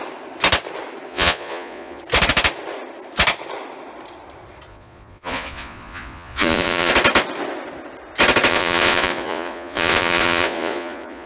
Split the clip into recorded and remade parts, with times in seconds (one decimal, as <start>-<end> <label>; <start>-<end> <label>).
0.0-1.1 recorded; 1.1-2.0 remade; 2.0-4.7 recorded; 4.7-6.9 remade; 6.9-8.5 recorded; 8.5-11.3 remade